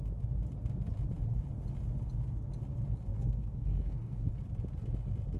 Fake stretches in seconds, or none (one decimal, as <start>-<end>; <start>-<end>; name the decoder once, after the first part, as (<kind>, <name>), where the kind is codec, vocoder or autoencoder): 3.1-4.3 (codec, SNAC)